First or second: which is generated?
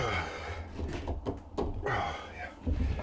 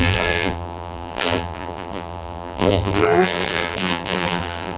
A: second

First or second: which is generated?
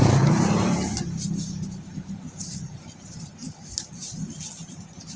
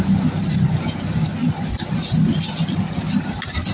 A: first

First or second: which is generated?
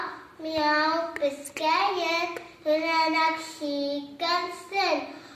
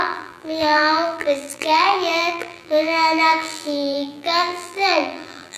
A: second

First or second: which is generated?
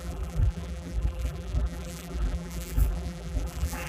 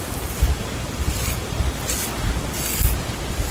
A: first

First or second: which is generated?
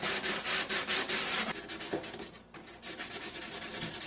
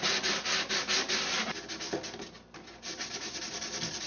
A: first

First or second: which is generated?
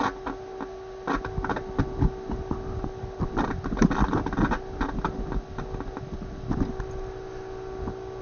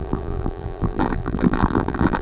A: second